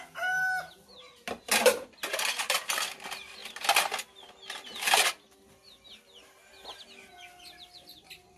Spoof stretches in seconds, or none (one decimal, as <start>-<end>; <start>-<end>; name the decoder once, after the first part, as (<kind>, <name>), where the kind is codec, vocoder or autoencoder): none